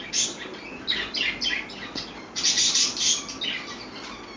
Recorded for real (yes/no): yes